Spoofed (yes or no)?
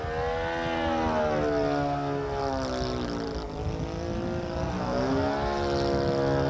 no